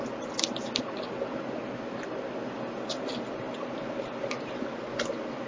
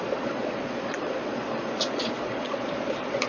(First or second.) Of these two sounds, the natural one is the first